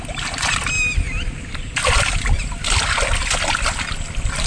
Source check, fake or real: real